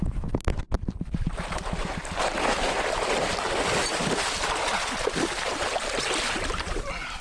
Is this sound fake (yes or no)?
no